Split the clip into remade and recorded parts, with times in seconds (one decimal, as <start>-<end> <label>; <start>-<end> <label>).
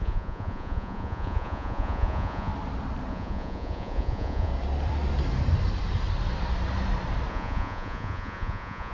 0.0-2.5 remade; 2.5-3.1 recorded; 3.1-4.5 remade; 4.5-7.3 recorded; 7.3-8.9 remade